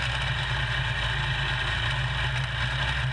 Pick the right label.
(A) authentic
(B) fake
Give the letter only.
A